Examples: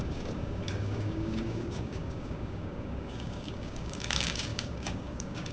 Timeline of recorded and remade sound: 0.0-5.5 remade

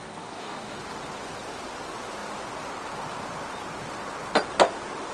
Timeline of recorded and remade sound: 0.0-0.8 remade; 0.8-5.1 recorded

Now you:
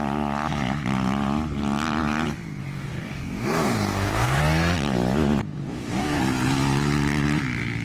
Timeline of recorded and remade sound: 0.0-2.6 recorded; 2.6-4.4 remade; 4.4-5.4 recorded; 5.4-6.2 remade; 6.2-7.8 recorded